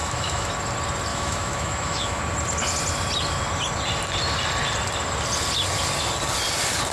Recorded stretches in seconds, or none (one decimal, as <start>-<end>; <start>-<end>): 0.5-1.1; 2.2-6.9